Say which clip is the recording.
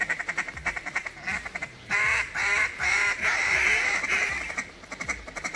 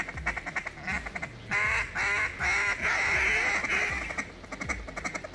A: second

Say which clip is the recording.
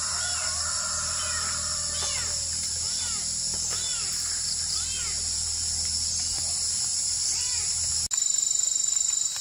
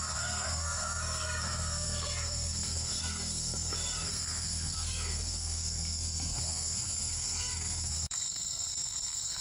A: first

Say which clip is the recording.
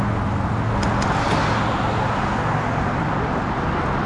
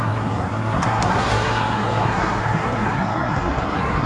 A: first